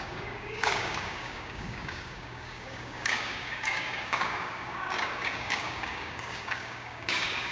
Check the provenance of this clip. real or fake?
fake